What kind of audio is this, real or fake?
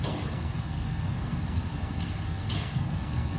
fake